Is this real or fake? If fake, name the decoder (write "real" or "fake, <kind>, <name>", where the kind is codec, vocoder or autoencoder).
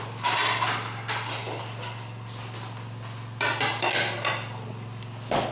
real